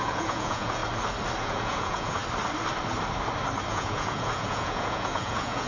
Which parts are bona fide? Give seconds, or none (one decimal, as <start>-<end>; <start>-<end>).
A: 0.8-1.4; 2.2-3.7